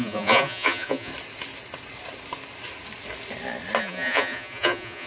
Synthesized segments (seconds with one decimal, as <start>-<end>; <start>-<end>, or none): 0.0-1.1; 3.8-5.1